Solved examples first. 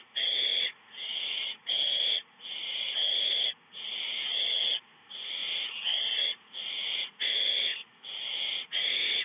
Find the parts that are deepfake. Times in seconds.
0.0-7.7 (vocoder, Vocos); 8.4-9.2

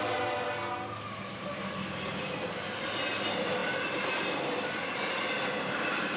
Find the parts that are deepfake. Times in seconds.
none

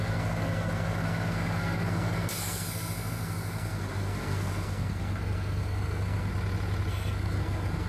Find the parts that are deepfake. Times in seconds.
0.0-6.3 (codec, SNAC); 6.9-7.9

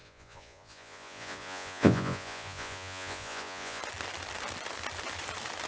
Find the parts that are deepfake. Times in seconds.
0.0-3.8 (vocoder, Vocos)

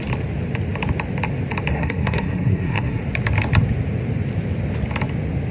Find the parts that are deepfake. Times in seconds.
1.7-3.0 (codec, SNAC)

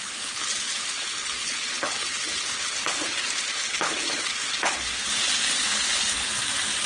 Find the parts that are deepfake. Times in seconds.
0.0-6.3 (codec, HILCodec)